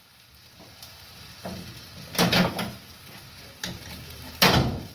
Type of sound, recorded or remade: recorded